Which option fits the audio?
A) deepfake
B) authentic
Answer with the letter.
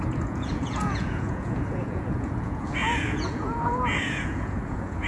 A